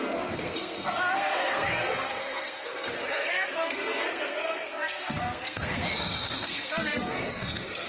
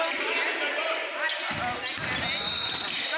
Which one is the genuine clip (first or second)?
second